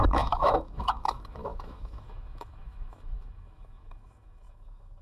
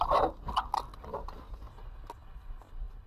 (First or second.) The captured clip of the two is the second